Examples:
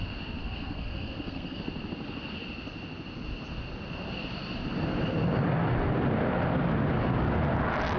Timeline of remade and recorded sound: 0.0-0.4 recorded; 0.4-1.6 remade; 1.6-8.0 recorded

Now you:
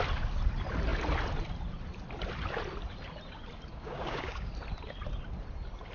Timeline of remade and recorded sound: 0.0-3.7 recorded; 3.7-4.5 remade; 4.5-5.9 recorded